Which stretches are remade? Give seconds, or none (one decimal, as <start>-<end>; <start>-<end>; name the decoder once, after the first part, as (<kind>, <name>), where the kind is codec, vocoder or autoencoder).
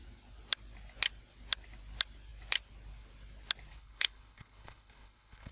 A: 3.7-5.5 (codec, HILCodec)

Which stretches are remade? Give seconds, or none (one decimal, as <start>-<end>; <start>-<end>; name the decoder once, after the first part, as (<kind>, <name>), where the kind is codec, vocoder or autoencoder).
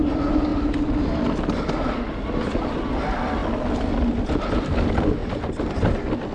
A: none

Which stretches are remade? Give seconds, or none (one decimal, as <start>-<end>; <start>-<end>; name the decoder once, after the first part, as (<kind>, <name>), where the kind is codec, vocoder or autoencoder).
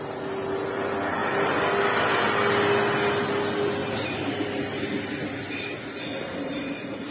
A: 3.8-4.6 (vocoder, BigVGAN v2); 6.1-7.1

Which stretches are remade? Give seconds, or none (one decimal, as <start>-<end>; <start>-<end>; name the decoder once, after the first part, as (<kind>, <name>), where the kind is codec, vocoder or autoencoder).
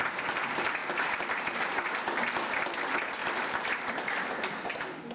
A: 0.8-1.4 (vocoder, BigVGAN v2); 3.2-3.7